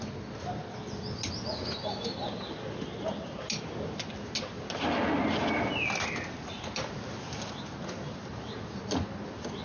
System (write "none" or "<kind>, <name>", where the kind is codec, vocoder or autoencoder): none